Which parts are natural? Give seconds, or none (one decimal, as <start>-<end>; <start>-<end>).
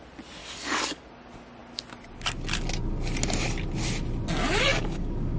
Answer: 0.0-0.4; 1.0-4.7